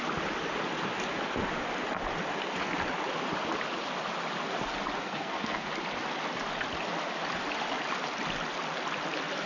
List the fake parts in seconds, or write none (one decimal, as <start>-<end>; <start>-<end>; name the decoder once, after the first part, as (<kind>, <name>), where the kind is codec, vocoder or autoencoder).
5.0-5.7 (codec, SNAC)